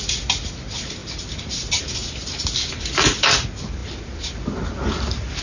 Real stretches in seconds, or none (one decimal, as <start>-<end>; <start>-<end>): 0.0-1.0; 1.8-3.8